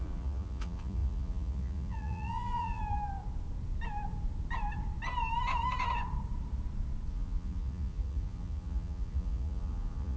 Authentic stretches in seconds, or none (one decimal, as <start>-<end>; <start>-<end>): 2.8-7.1